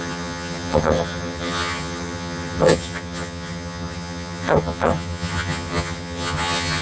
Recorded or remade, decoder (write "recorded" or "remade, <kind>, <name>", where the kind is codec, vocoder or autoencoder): remade, vocoder, HiFi-GAN